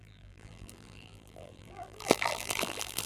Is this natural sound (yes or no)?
no